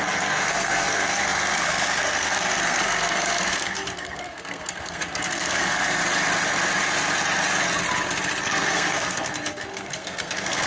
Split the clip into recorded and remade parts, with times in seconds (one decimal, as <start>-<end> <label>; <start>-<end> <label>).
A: 0.0-6.0 remade; 6.0-8.4 recorded; 8.4-10.7 remade